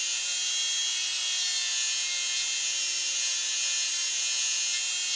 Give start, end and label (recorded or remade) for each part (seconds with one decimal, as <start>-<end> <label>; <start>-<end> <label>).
0.0-5.2 recorded